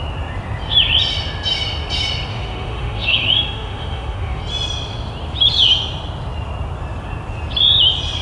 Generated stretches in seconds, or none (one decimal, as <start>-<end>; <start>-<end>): 2.3-4.4